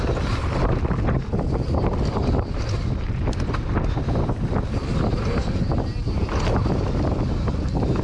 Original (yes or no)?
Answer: yes